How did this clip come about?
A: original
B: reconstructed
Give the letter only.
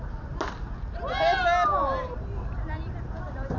A